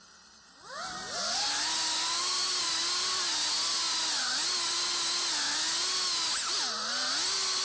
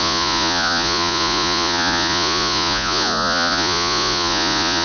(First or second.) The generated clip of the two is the second